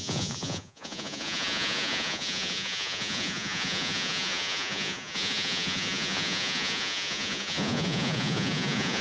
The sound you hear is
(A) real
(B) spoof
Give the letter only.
B